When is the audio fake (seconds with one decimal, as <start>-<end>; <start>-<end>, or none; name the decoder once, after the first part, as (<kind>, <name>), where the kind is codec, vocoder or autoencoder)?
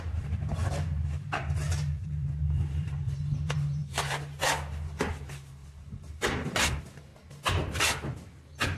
0.0-3.8 (vocoder, BigVGAN v2); 5.1-7.1